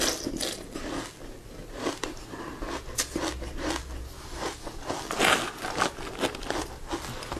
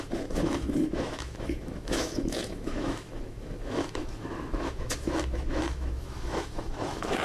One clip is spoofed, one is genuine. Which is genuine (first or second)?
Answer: first